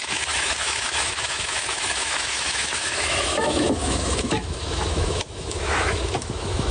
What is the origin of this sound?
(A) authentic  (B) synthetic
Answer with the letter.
B